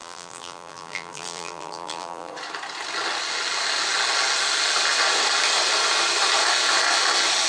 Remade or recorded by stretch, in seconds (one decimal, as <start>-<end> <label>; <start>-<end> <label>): 0.0-2.3 remade; 2.3-7.5 recorded